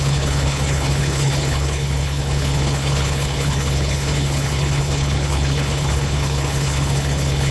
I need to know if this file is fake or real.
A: fake